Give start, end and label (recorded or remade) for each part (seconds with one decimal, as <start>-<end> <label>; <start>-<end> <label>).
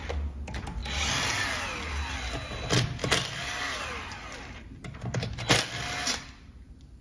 0.0-7.0 recorded